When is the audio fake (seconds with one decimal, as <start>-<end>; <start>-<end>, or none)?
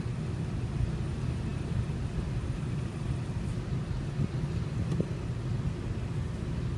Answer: 1.5-3.7